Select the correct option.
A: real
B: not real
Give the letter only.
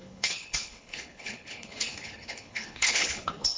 B